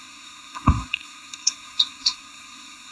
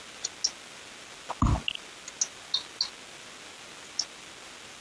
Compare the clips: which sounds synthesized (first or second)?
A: first